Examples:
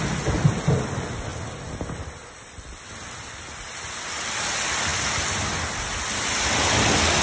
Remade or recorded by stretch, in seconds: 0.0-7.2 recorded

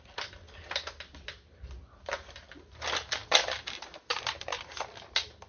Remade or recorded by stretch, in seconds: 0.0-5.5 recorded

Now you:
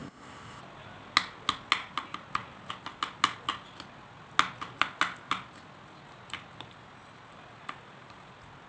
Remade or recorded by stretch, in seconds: 0.0-0.6 remade; 0.6-8.7 recorded